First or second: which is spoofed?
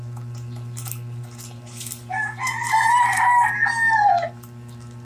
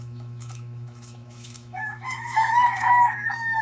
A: second